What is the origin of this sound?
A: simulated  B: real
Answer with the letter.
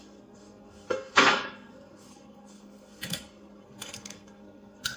A